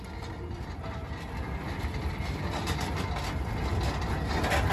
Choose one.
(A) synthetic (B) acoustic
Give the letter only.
B